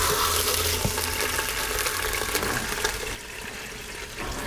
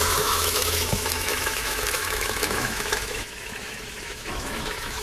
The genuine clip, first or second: first